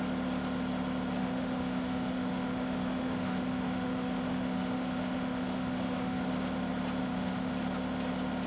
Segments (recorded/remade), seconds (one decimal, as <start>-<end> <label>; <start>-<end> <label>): 0.0-1.2 recorded; 1.2-6.3 remade; 6.3-7.0 recorded; 7.0-7.5 remade; 7.5-8.5 recorded